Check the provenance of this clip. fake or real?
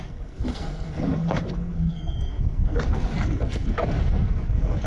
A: fake